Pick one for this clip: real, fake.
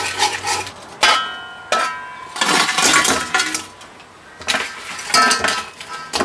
real